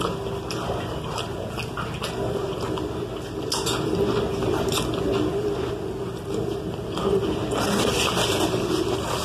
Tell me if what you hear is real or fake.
real